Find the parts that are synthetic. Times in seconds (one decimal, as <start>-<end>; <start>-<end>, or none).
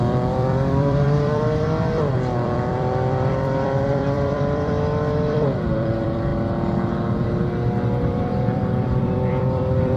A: 0.0-6.3; 8.0-10.0